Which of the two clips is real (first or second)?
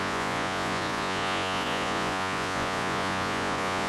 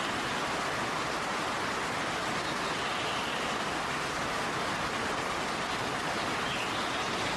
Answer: second